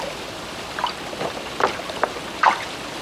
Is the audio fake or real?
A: fake